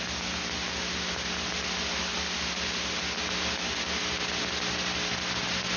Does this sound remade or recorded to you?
recorded